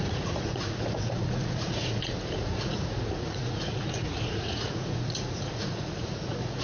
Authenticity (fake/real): fake